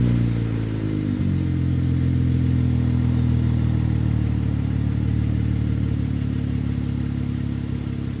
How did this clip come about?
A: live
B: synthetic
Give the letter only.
A